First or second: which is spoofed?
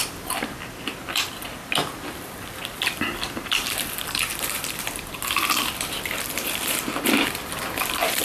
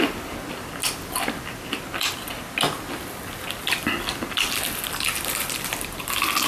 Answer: first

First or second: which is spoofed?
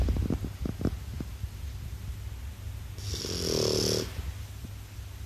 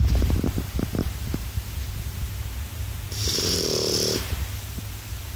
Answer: second